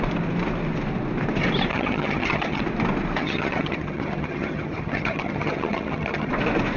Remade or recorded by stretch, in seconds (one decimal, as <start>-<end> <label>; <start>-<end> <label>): 0.0-1.7 recorded; 1.7-2.6 remade; 2.6-3.2 recorded; 3.2-6.3 remade; 6.3-6.8 recorded